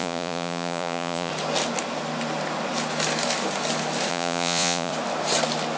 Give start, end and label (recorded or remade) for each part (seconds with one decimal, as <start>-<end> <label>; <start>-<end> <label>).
0.0-1.3 remade; 1.3-4.1 recorded; 4.1-4.9 remade; 4.9-5.8 recorded